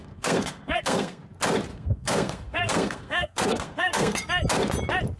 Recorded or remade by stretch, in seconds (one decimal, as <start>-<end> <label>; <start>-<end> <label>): 0.0-1.2 remade; 1.2-1.7 recorded; 1.7-4.3 remade; 4.3-5.2 recorded